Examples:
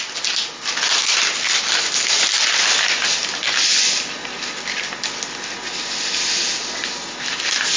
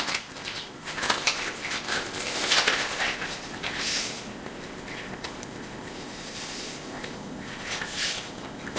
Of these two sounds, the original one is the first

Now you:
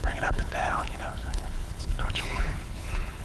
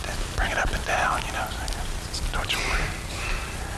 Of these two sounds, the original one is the second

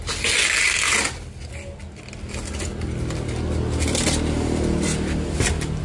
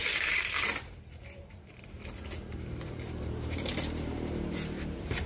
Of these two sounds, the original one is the first